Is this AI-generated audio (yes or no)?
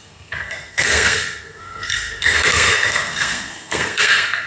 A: yes